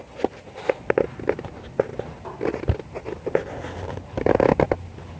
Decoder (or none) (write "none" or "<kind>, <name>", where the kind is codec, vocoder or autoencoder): none